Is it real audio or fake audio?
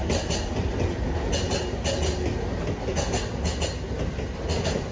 real